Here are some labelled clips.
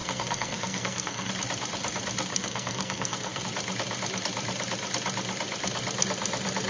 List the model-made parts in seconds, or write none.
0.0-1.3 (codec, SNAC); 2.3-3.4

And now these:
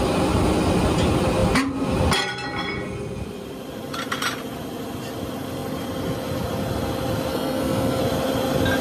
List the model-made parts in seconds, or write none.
7.3-8.0 (codec, SNAC)

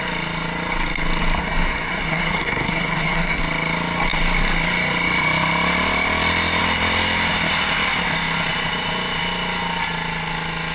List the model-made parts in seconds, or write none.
1.4-3.4 (codec, SNAC)

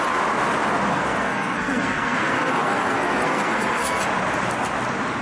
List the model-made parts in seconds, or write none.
0.9-4.0 (codec, SNAC)

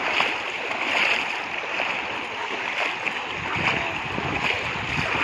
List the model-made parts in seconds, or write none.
none

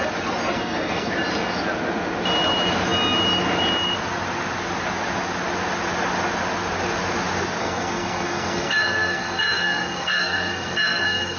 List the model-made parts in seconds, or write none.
0.5-1.1 (codec, SNAC); 7.6-11.4

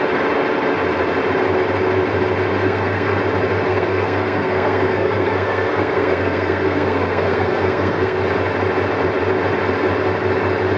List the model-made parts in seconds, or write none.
2.5-3.2 (codec, SNAC); 3.7-8.2

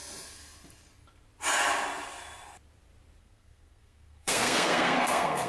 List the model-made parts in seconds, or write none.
3.2-5.5 (codec, SNAC)